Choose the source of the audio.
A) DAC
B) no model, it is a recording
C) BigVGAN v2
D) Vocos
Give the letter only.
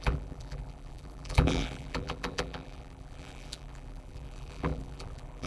C